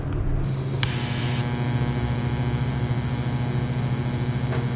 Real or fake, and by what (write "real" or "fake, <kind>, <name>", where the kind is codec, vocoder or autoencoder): real